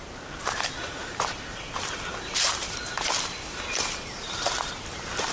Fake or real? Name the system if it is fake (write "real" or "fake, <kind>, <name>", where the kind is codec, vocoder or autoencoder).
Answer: fake, vocoder, BigVGAN v2